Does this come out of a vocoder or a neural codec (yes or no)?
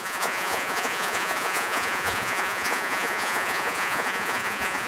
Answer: yes